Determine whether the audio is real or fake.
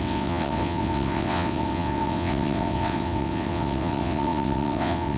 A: fake